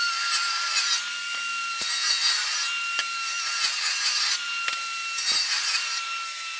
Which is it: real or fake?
real